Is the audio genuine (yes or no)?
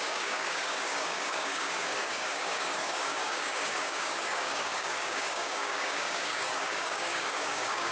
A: no